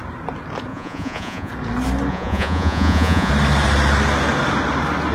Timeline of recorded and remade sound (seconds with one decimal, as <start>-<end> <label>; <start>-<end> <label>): 0.0-0.7 recorded; 0.7-1.5 remade; 1.5-2.1 recorded; 2.1-3.3 remade; 3.3-5.1 recorded